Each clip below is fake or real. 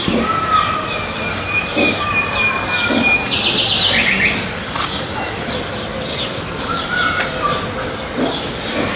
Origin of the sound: real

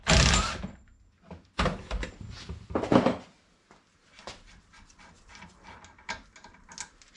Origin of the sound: real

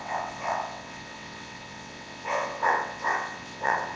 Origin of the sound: fake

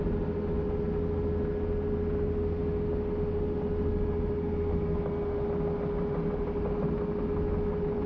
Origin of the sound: real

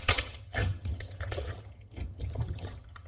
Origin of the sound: fake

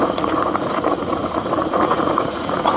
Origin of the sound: fake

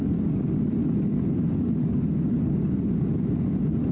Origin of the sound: real